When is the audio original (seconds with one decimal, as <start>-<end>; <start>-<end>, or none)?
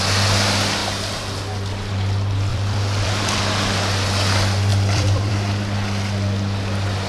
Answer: 0.0-2.5; 3.4-4.7; 5.3-7.1